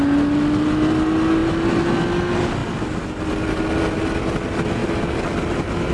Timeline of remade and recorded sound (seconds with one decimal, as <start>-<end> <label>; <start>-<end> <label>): 0.0-5.9 recorded